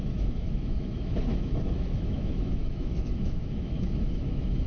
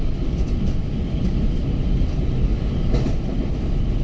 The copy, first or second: first